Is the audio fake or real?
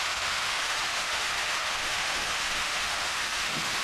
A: fake